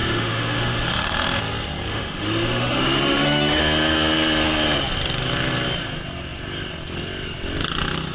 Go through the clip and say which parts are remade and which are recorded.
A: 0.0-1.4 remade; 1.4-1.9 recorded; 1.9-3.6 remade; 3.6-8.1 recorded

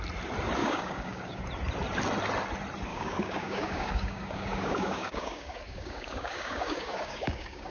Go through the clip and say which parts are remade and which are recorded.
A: 0.0-0.6 recorded; 0.6-1.4 remade; 1.4-2.9 recorded; 2.9-7.7 remade

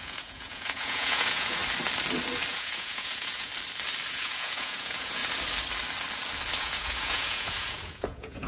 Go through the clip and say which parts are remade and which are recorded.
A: 0.0-1.6 remade; 1.6-2.5 recorded; 2.5-3.5 remade; 3.5-4.1 recorded; 4.1-5.2 remade; 5.2-6.6 recorded; 6.6-8.5 remade

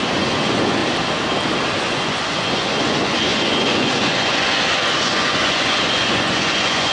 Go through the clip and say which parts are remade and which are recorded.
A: 0.0-0.8 remade; 0.8-1.8 recorded; 1.8-6.9 remade